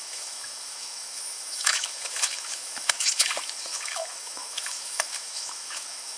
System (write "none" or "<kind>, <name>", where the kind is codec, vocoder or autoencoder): autoencoder, DAC-VAE